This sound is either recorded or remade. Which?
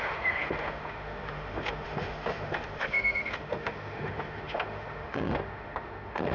remade